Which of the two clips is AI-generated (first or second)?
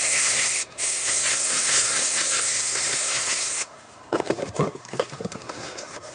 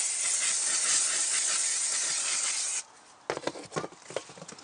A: first